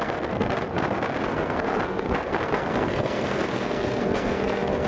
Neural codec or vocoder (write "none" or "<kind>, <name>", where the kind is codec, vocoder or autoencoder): codec, SNAC